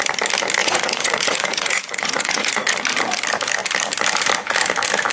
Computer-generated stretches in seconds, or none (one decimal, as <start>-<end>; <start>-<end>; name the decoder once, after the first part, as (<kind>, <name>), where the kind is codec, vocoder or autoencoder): 0.6-2.7 (vocoder, Vocos)